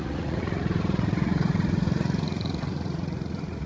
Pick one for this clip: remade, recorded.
remade